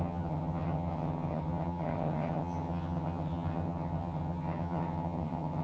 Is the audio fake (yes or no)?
yes